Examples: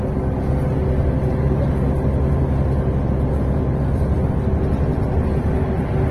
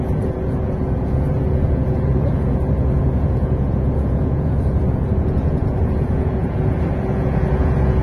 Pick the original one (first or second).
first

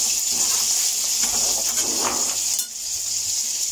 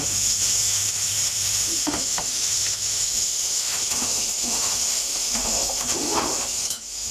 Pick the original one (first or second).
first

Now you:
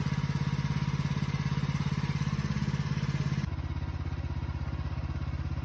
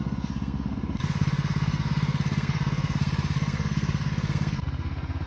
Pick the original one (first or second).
first